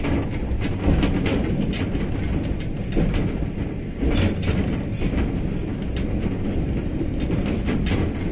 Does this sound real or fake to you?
real